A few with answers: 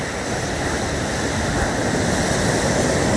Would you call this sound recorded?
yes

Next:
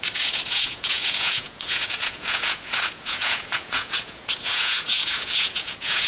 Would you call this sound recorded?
no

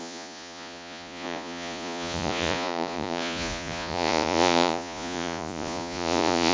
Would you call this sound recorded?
no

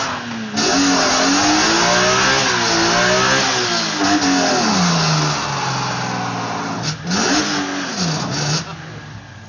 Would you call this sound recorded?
yes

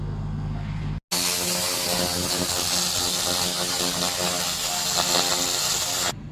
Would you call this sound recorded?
yes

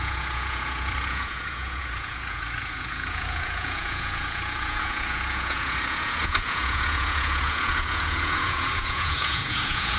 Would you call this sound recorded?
no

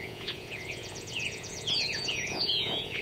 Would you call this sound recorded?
no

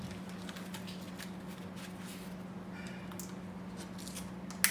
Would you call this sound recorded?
yes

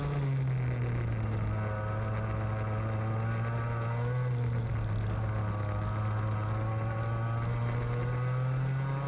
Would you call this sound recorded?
yes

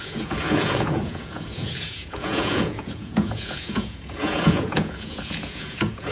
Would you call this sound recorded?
no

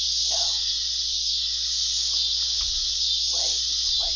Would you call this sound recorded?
yes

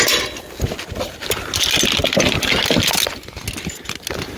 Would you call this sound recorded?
yes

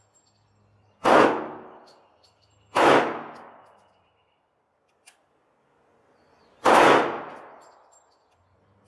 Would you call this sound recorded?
yes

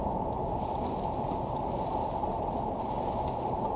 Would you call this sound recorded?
yes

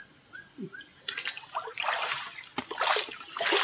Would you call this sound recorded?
yes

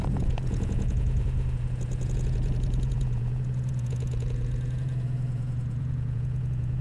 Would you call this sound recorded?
no